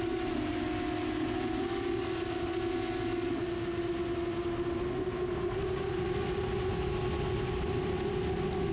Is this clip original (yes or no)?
yes